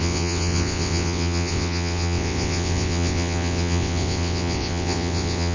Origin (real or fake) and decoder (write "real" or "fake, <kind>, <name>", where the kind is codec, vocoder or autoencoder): fake, vocoder, WaveNeXt